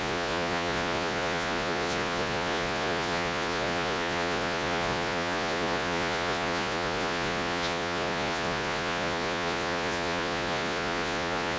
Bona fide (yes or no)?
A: no